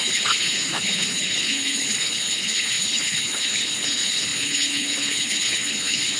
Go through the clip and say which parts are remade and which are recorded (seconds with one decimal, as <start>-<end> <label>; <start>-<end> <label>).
0.0-6.2 remade